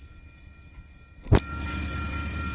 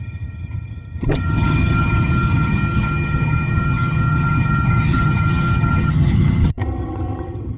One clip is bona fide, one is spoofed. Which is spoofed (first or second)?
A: second